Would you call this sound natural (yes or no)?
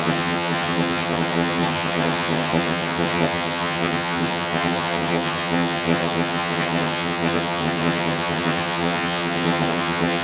no